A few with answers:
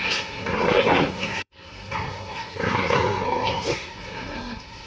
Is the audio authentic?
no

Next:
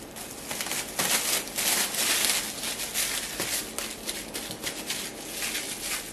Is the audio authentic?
yes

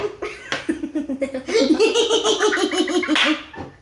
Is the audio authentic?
yes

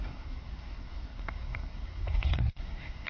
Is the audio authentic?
no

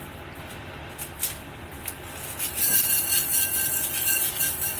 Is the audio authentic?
yes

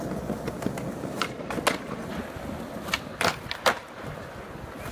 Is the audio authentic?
yes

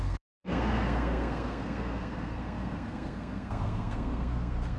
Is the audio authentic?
no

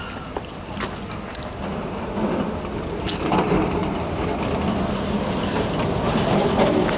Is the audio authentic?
yes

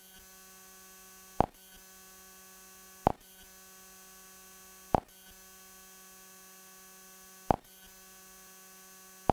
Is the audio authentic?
yes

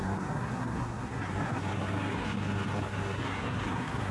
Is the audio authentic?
no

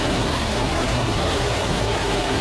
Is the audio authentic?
no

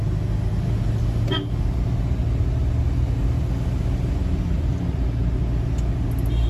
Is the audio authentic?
yes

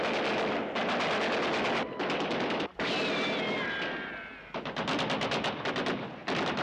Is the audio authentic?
yes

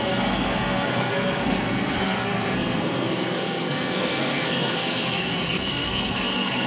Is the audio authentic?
no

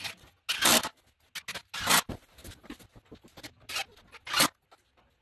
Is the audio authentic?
yes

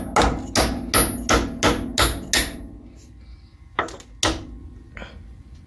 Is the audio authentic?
yes